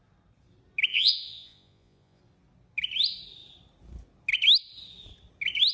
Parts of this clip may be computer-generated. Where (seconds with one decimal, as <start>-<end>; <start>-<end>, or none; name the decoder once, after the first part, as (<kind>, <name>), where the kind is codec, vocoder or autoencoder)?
0.9-2.2 (vocoder, Vocos)